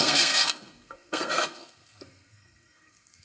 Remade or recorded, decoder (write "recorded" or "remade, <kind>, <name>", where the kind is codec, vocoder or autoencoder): remade, codec, SNAC